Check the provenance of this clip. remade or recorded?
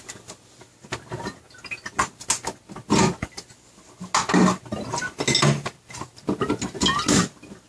recorded